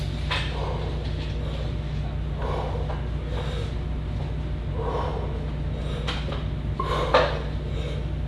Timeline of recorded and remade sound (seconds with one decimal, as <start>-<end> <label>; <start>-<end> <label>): 0.0-8.3 recorded